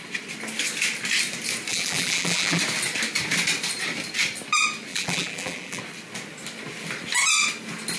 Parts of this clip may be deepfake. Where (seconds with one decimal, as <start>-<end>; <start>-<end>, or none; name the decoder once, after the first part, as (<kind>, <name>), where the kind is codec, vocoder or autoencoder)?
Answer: 1.7-2.6 (vocoder, BigVGAN v2); 4.9-5.8